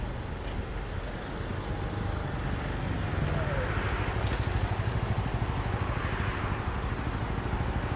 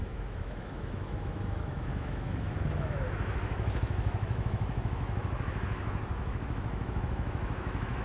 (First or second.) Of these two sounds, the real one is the first